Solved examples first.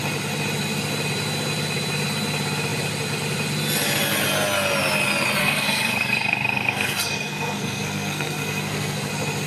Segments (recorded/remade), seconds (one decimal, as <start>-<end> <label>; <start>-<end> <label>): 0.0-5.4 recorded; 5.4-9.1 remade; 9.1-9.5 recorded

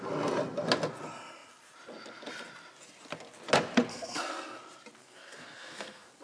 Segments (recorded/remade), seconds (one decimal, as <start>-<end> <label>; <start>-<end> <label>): 0.0-3.9 recorded; 3.9-4.6 remade; 4.6-5.0 recorded; 5.0-6.2 remade

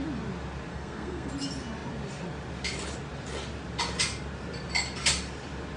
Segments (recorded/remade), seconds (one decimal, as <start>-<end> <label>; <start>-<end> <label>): 0.0-0.7 recorded; 0.7-1.3 remade; 1.3-5.8 recorded

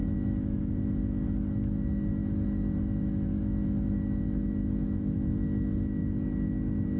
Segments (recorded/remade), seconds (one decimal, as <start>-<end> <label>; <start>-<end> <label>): 0.0-7.0 remade